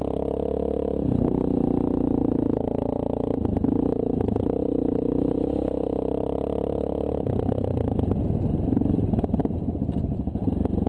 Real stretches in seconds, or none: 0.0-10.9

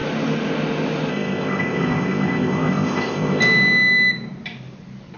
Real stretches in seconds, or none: 0.0-1.1; 3.4-5.2

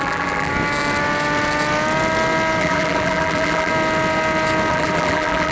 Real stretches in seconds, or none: 0.5-2.6; 3.7-4.7

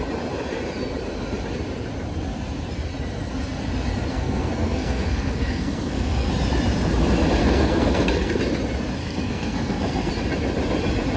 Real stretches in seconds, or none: 0.0-4.1; 6.3-7.4; 8.4-9.0; 10.1-11.2

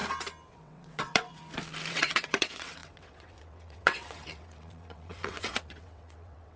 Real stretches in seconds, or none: 0.0-0.5; 1.4-1.9